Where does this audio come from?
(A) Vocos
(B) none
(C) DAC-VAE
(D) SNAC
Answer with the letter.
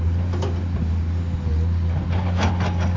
B